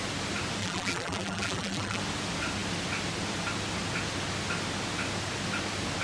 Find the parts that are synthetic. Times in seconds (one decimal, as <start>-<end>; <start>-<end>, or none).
0.6-2.0